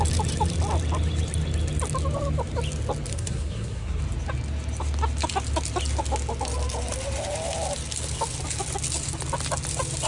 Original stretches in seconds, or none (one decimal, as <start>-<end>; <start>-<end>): 0.0-3.1; 4.0-10.1